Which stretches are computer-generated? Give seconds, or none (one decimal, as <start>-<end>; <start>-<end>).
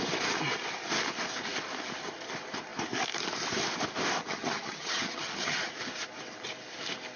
4.2-5.7